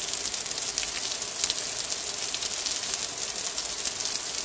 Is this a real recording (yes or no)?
yes